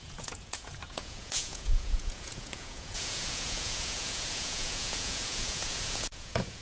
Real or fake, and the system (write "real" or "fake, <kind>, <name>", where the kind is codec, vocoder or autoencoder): fake, vocoder, Vocos